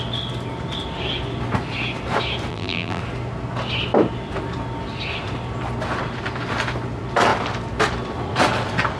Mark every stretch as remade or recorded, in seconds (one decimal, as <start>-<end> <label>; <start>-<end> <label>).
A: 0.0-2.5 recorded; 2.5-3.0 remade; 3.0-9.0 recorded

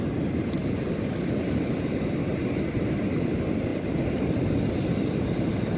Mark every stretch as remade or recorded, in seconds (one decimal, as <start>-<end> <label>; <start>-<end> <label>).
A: 0.0-0.6 recorded; 0.6-2.1 remade; 2.1-5.8 recorded

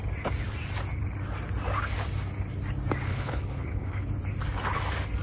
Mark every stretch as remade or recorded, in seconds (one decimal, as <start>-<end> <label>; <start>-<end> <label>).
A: 0.0-3.1 recorded; 3.1-4.1 remade; 4.1-5.2 recorded